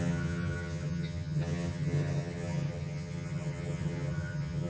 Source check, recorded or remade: remade